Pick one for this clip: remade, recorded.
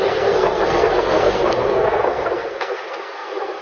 remade